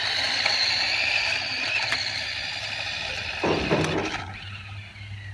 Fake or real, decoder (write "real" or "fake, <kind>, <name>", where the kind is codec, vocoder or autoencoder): real